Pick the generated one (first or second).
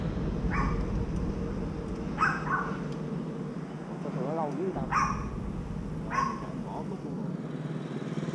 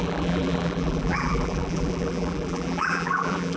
second